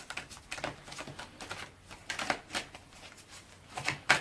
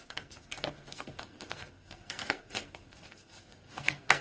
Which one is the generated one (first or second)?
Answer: second